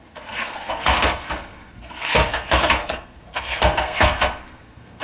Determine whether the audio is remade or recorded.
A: remade